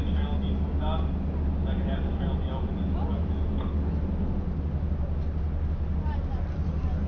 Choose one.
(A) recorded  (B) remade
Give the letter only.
A